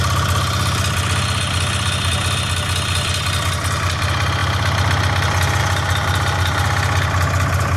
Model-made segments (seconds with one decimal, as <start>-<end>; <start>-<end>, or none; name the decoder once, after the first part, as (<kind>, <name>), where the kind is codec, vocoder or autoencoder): none